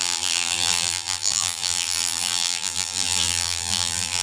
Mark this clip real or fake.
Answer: fake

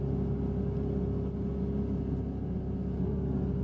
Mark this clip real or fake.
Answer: real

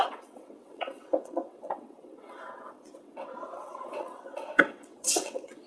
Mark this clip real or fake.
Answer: fake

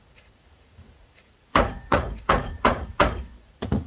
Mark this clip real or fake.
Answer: fake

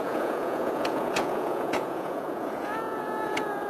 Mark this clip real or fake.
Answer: fake